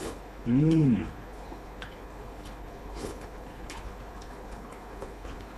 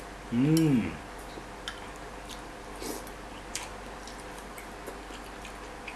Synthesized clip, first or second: first